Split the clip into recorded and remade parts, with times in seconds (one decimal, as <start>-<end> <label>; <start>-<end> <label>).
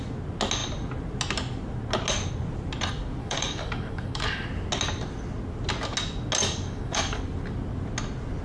0.0-3.2 recorded; 3.2-4.5 remade; 4.5-6.4 recorded; 6.4-7.2 remade; 7.2-8.4 recorded